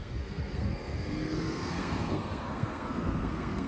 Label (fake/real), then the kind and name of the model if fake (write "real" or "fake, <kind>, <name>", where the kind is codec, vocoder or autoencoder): fake, codec, SNAC